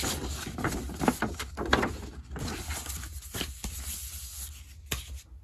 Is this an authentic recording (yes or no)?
yes